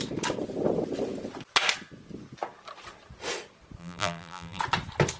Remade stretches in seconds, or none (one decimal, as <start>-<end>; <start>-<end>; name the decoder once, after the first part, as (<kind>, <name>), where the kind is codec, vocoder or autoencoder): 3.8-4.6 (vocoder, BigVGAN v2)